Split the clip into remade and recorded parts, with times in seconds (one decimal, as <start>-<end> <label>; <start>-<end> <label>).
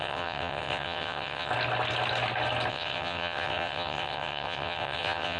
0.0-1.5 remade; 1.5-2.7 recorded; 2.7-5.4 remade